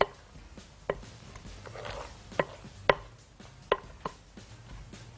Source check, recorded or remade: recorded